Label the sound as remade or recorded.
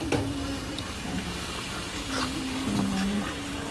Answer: recorded